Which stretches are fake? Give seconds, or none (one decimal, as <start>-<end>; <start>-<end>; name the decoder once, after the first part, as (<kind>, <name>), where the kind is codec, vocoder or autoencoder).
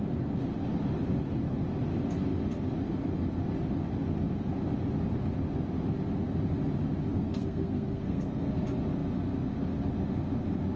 7.1-8.5 (codec, SNAC)